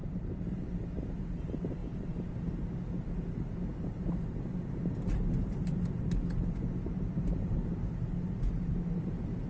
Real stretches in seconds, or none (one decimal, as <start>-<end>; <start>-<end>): 0.0-9.5